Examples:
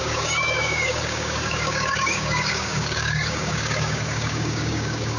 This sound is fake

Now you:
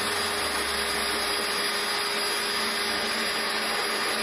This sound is real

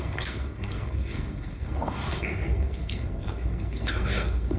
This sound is fake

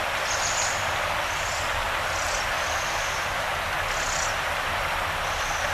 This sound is real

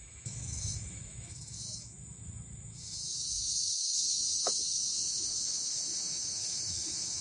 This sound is fake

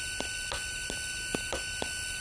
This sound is real